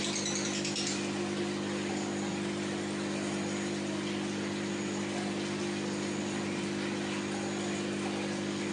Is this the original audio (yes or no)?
yes